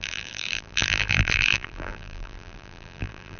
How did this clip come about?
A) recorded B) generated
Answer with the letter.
B